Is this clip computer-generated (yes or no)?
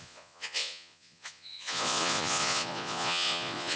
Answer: yes